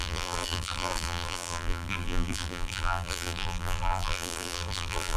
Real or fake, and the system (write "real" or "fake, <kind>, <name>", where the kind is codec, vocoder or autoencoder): fake, vocoder, BigVGAN v2